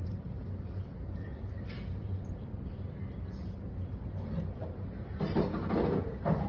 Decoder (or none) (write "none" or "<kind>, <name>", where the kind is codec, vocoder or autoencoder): none